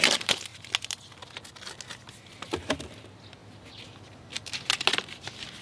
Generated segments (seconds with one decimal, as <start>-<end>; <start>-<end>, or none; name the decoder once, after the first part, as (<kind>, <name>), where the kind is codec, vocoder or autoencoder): none